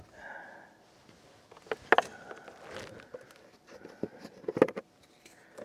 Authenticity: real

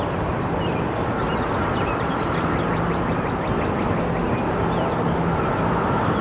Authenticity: real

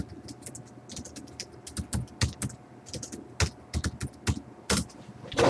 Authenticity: real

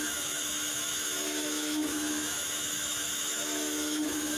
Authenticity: fake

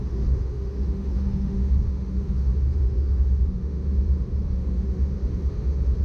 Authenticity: fake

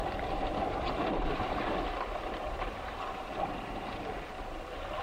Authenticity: real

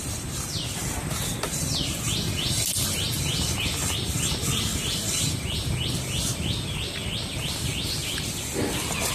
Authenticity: real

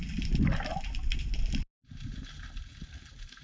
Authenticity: real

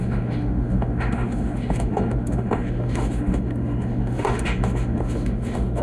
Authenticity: fake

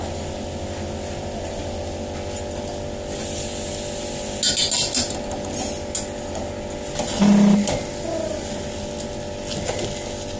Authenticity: real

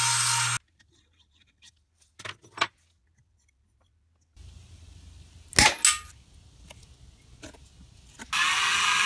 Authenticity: real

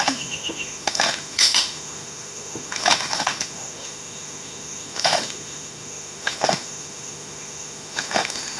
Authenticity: fake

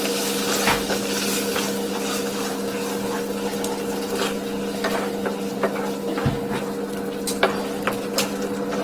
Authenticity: real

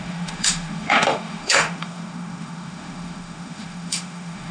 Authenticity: fake